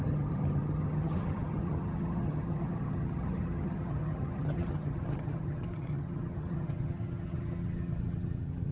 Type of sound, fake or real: fake